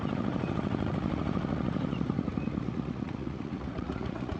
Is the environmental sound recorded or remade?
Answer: remade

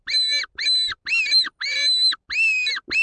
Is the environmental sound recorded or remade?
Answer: recorded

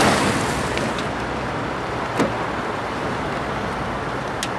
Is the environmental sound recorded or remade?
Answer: recorded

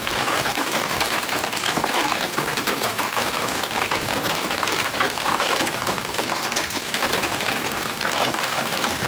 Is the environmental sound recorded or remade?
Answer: remade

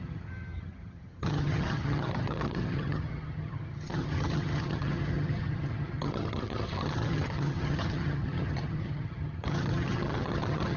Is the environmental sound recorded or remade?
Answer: remade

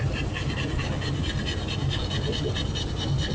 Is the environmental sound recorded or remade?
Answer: recorded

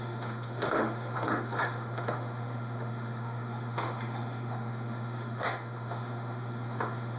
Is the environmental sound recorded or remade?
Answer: remade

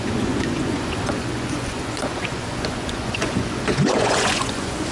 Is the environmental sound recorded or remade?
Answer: remade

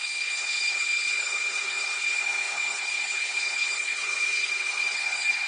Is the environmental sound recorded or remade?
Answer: remade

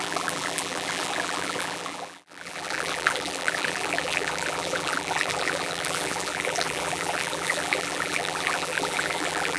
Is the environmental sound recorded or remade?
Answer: remade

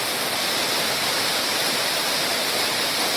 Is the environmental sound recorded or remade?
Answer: recorded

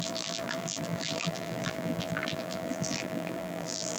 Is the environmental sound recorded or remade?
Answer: remade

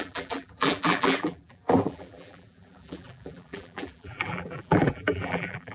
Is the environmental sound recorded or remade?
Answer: remade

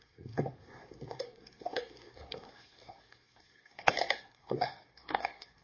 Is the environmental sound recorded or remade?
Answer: remade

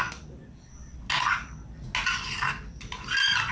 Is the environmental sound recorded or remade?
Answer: recorded